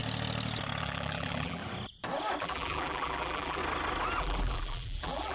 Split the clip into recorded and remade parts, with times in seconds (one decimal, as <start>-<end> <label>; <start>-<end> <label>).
0.0-0.8 recorded; 0.8-1.6 remade; 1.6-2.4 recorded; 2.4-3.6 remade; 3.6-4.2 recorded; 4.2-5.3 remade